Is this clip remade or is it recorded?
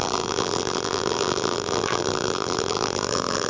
remade